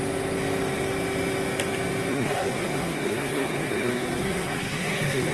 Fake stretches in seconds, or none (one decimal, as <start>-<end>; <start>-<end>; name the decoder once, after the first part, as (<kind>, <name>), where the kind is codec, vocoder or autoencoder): 2.1-5.3 (codec, SNAC)

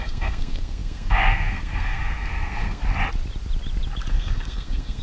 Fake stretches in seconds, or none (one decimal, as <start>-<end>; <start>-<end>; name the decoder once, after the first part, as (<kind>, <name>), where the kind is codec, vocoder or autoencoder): 0.0-2.8 (codec, SNAC); 4.1-5.0